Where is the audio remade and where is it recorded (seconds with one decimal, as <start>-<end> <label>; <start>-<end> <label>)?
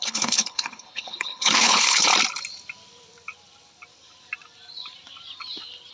0.0-2.1 remade; 2.1-5.9 recorded